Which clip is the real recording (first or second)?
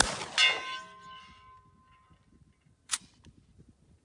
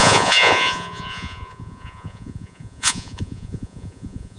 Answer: first